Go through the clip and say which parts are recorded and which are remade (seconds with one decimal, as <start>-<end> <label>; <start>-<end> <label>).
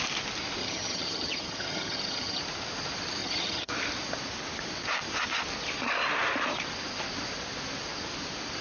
0.0-0.6 recorded; 0.6-2.4 remade; 2.4-3.2 recorded; 3.2-3.7 remade; 3.7-8.6 recorded